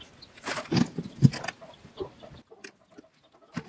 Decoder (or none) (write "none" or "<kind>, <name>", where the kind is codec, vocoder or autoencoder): none